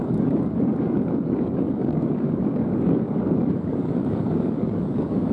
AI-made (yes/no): yes